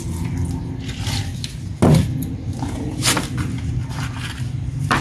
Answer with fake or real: real